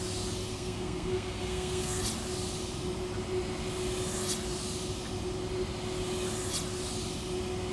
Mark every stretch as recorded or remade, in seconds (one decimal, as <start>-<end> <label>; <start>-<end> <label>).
0.0-0.5 recorded; 0.5-2.0 remade; 2.0-7.7 recorded

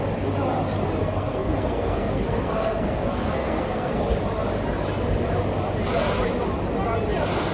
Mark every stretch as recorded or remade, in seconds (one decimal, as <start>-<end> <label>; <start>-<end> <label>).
0.0-1.0 recorded; 1.0-4.0 remade; 4.0-7.5 recorded

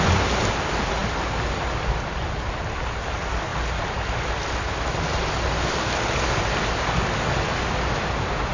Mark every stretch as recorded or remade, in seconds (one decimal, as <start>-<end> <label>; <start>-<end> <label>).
0.0-8.5 recorded

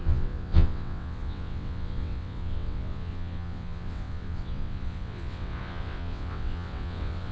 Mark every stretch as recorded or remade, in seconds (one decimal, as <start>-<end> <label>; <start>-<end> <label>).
0.0-7.3 remade

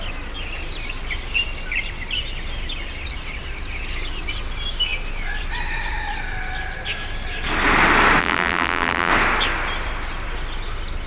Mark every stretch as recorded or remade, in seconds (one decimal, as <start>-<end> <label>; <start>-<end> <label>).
0.0-8.2 recorded; 8.2-9.1 remade; 9.1-11.1 recorded

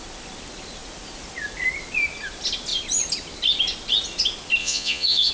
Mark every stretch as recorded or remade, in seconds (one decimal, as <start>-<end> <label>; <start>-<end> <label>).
0.0-4.6 recorded; 4.6-5.3 remade

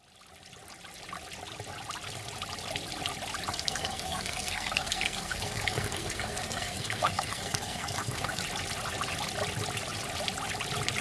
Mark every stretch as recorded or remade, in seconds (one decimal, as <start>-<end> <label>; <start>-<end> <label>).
0.0-3.5 recorded; 3.5-8.4 remade; 8.4-11.0 recorded